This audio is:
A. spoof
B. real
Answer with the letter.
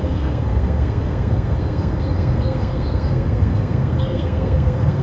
A